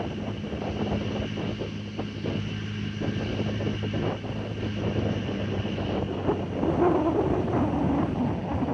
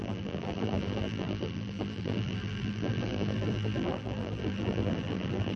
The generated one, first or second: second